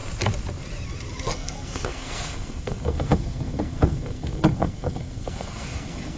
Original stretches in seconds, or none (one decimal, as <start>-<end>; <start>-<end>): 0.0-1.2